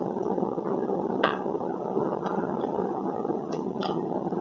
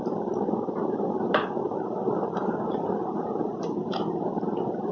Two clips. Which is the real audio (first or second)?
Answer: second